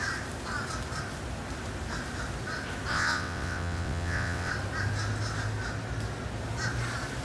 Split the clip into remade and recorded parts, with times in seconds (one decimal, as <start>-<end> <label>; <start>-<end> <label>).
0.0-2.9 recorded; 2.9-4.5 remade; 4.5-7.2 recorded